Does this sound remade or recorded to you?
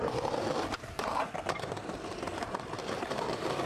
remade